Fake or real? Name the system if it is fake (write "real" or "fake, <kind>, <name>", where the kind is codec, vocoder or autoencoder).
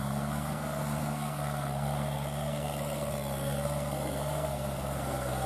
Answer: fake, codec, SNAC